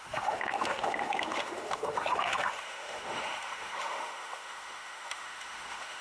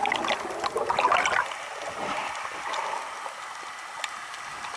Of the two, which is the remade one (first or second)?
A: first